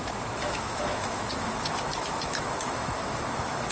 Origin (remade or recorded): remade